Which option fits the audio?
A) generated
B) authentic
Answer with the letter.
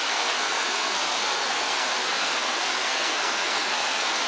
A